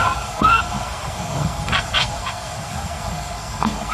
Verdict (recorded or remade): remade